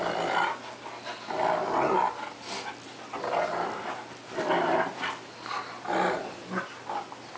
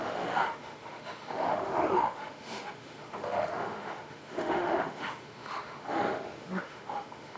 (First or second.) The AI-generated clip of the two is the second